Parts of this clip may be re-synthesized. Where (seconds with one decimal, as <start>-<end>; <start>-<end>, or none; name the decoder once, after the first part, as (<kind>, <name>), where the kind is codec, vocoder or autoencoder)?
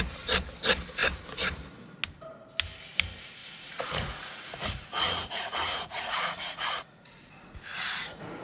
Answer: 3.4-8.4 (vocoder, Vocos)